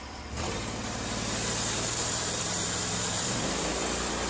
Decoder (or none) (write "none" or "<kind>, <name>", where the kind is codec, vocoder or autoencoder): vocoder, BigVGAN v2